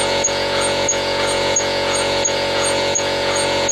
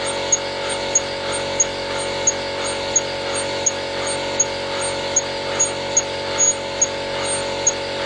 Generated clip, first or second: first